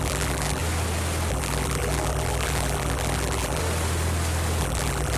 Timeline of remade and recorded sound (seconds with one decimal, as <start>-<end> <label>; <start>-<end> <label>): 0.0-0.6 remade; 0.6-1.3 recorded; 1.3-3.6 remade; 3.6-4.6 recorded; 4.6-5.2 remade